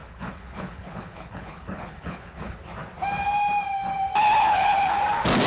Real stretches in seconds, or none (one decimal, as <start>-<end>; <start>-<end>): 2.6-4.4; 5.0-5.5